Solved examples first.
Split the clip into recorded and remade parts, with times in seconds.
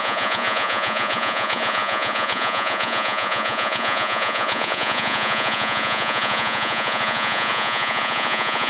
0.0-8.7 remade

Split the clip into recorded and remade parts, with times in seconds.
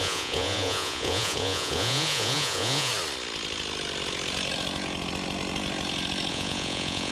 0.0-2.9 remade; 2.9-6.3 recorded; 6.3-7.1 remade